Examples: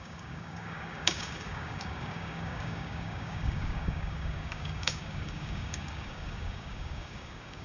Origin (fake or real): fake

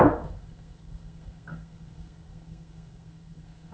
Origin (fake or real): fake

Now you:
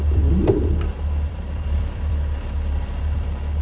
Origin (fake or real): fake